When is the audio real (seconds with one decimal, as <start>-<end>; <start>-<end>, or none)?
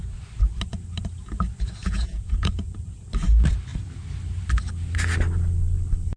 0.0-1.8; 3.1-6.2